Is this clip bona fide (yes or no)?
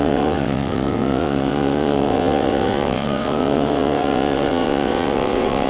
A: no